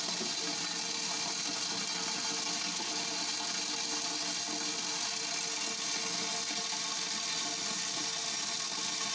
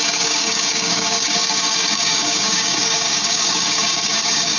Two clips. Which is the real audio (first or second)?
first